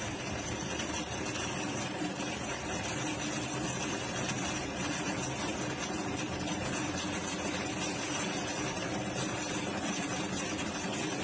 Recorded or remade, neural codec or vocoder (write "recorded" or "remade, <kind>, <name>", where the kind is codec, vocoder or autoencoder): recorded